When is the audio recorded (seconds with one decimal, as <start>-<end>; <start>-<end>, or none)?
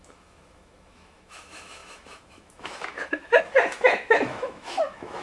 none